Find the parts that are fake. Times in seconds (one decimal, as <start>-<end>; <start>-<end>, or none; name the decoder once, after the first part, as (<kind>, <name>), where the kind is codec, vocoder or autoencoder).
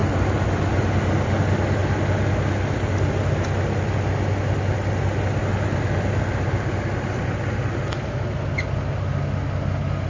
none